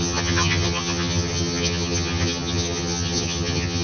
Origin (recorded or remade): remade